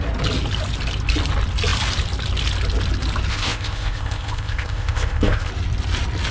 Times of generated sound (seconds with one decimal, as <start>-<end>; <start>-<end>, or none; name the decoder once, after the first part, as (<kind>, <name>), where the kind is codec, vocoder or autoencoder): 3.3-5.5 (codec, ZipCodec)